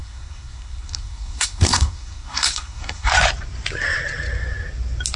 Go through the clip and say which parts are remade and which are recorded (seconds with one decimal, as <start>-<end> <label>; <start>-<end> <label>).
0.0-3.1 remade; 3.1-5.2 recorded